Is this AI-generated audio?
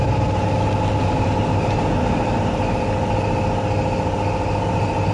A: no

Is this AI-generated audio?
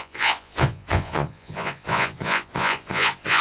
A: yes